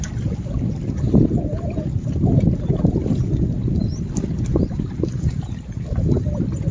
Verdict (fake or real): real